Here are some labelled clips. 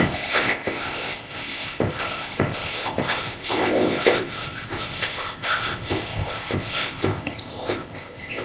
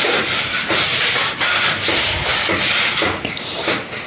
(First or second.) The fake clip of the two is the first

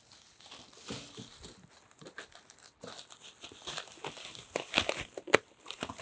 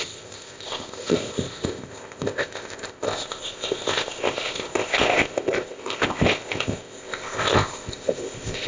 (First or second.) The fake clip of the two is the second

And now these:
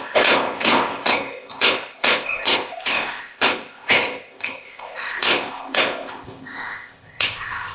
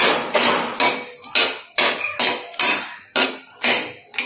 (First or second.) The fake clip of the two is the first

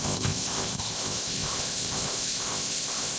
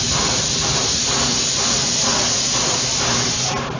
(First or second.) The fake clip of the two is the first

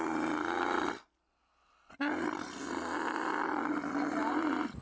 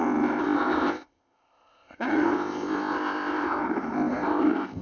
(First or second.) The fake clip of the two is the second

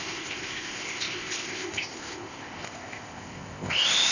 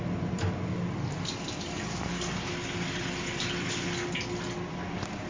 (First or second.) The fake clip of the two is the first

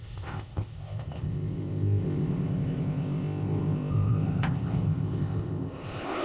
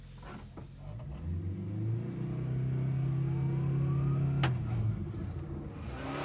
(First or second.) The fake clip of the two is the first